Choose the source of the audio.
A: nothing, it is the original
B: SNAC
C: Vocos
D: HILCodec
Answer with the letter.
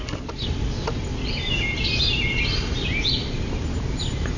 A